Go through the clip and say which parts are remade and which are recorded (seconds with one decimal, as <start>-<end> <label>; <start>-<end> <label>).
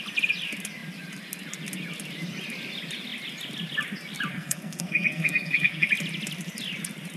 0.0-4.3 recorded; 4.3-5.9 remade; 5.9-7.2 recorded